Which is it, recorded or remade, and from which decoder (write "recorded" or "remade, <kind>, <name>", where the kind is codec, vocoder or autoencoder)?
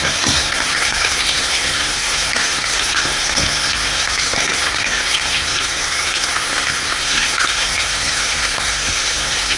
remade, codec, SNAC